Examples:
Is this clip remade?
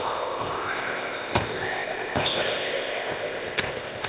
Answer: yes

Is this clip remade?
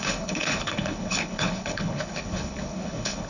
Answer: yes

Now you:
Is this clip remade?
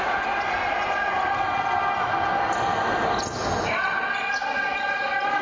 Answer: no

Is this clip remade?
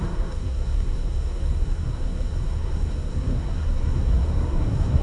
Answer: yes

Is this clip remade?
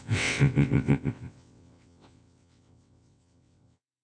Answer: yes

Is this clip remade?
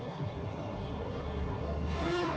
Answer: yes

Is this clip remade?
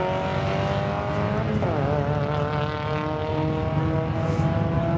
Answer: no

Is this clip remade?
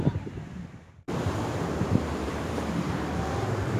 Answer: yes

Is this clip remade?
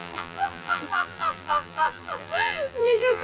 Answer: yes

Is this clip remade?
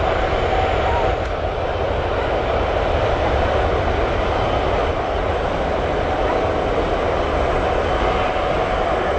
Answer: no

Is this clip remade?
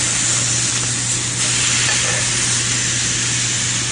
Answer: no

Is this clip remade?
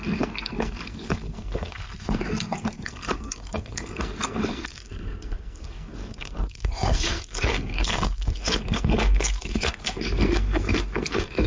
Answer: yes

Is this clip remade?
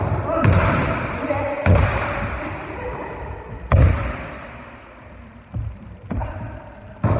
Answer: yes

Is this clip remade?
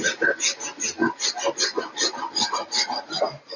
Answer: no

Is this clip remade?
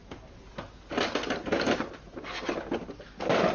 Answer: no